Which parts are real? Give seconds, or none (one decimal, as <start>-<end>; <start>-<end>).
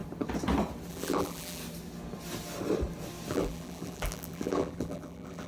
0.0-0.9; 1.6-3.3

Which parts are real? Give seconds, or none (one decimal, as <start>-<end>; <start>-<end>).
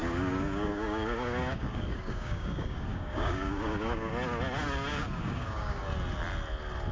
4.1-4.9; 5.8-6.9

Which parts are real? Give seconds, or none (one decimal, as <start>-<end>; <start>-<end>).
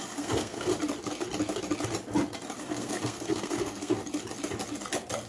0.7-2.6; 4.0-5.3